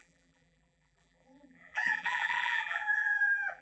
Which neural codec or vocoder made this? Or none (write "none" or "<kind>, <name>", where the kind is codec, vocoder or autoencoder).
vocoder, BigVGAN v2